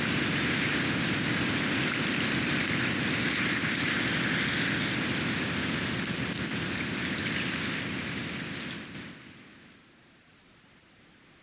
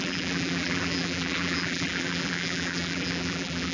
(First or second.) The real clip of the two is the first